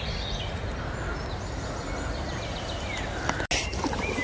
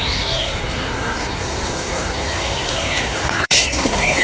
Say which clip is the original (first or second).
first